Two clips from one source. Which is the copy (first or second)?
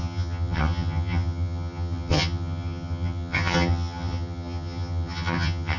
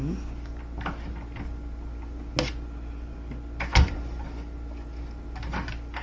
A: first